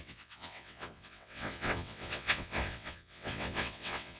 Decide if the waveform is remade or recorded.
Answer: remade